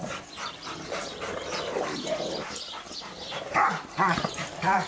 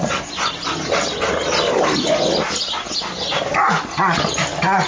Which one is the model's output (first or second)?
first